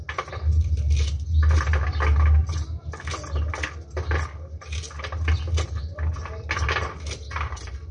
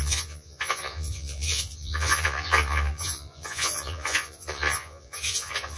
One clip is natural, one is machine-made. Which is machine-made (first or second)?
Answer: second